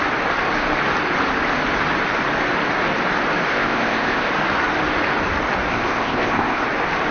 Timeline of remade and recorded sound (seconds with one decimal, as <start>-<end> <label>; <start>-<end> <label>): 0.0-3.5 recorded; 3.5-4.3 remade; 4.3-5.7 recorded; 5.7-6.6 remade; 6.6-7.1 recorded